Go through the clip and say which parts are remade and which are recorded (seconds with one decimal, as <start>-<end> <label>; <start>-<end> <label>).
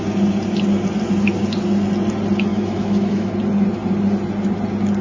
0.0-2.5 recorded; 2.5-3.3 remade; 3.3-5.0 recorded